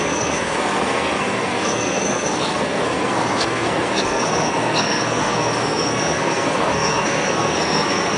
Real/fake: fake